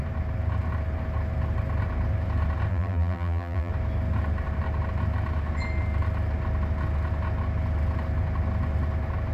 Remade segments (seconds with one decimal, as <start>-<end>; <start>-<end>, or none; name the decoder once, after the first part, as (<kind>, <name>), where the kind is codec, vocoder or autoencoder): 2.7-3.7 (vocoder, BigVGAN v2)